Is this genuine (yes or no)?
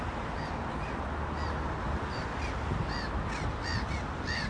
yes